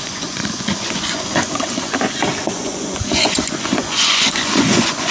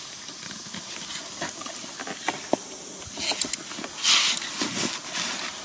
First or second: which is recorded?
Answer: second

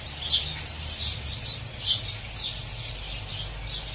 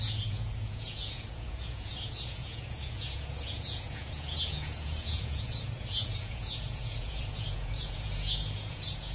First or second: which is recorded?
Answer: first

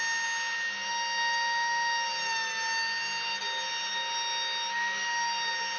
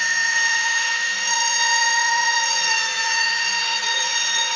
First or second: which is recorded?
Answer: first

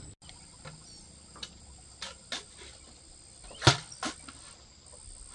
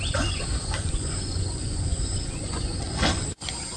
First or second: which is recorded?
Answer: first